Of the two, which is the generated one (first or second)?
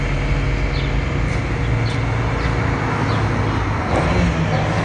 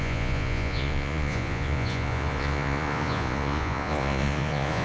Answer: second